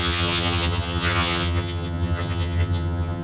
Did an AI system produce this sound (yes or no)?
yes